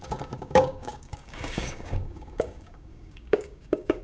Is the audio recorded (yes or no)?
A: no